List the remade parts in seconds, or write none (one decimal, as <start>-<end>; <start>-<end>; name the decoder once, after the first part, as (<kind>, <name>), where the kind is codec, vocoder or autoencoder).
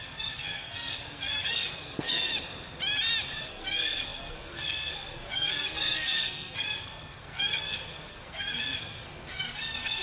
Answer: 0.0-2.3 (codec, SNAC); 3.4-10.0